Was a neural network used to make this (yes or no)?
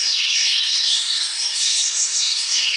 yes